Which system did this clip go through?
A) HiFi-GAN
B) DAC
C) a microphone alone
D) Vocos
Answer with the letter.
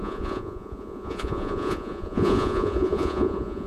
D